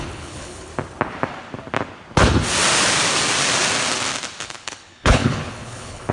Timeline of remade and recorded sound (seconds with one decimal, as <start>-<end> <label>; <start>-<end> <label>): 0.0-0.7 remade; 0.7-4.4 recorded; 4.4-6.1 remade